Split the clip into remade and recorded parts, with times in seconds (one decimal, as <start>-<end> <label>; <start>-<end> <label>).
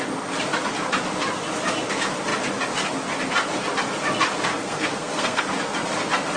0.0-4.5 recorded; 4.5-5.4 remade; 5.4-6.4 recorded